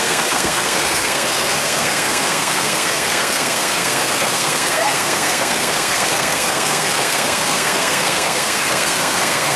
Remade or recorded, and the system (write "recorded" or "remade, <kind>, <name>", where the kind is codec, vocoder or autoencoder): remade, codec, SNAC